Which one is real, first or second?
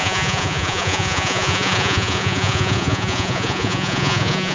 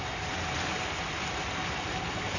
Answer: second